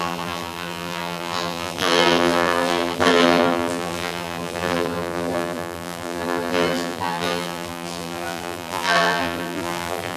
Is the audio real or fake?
fake